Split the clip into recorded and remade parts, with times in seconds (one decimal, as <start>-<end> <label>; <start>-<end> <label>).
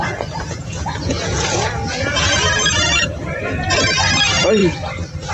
0.0-4.6 remade; 4.6-5.3 recorded